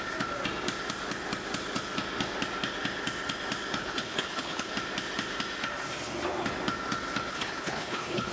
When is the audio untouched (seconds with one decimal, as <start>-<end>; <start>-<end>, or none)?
0.0-3.8; 4.7-7.3